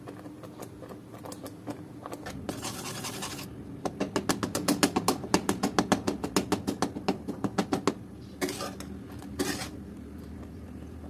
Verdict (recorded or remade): recorded